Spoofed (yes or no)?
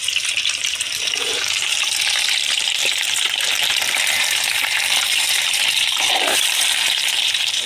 yes